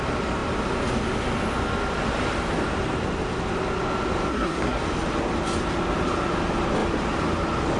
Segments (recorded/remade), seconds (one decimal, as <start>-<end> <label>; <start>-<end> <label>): 0.0-4.3 recorded; 4.3-4.8 remade; 4.8-7.8 recorded